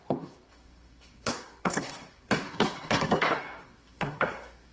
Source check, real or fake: fake